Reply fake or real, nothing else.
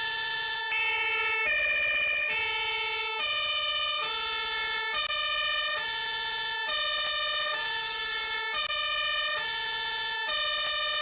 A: real